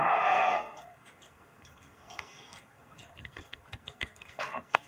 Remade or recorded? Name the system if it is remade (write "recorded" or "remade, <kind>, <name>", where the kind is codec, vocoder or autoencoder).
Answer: remade, codec, SNAC